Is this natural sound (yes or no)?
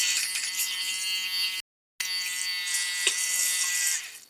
yes